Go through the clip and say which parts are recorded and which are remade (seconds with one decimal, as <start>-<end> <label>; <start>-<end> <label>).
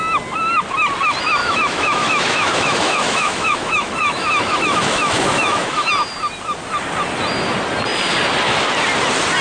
0.0-1.4 recorded; 1.4-5.9 remade; 5.9-9.4 recorded